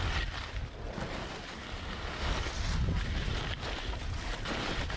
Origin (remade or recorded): recorded